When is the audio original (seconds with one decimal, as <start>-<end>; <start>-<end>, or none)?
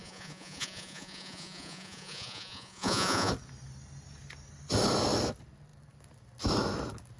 3.3-7.2